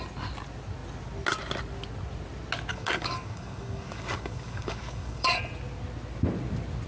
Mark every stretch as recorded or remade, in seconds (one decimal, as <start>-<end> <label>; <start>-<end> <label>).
0.0-2.7 recorded; 2.7-5.4 remade; 5.4-6.9 recorded

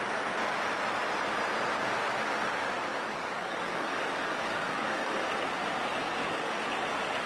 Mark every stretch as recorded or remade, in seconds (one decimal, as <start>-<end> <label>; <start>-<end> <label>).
0.0-2.9 recorded; 2.9-5.1 remade; 5.1-6.0 recorded; 6.0-6.6 remade; 6.6-7.3 recorded

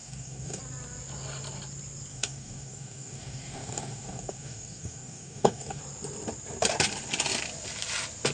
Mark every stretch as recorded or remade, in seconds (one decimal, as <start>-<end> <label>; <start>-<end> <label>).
0.0-0.6 remade; 0.6-2.1 recorded; 2.1-5.8 remade; 5.8-8.3 recorded

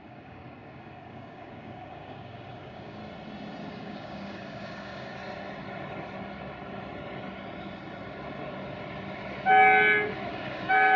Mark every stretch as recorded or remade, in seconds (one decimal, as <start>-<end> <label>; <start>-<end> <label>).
0.0-3.0 remade; 3.0-3.7 recorded; 3.7-5.2 remade; 5.2-10.3 recorded; 10.3-11.0 remade

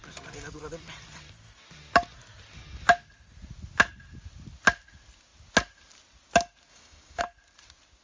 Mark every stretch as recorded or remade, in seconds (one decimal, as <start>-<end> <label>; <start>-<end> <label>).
0.0-6.7 recorded; 6.7-7.2 remade; 7.2-8.0 recorded

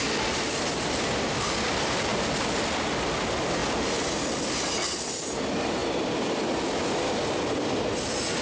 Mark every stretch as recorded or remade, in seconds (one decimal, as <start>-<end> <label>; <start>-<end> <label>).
0.0-8.4 recorded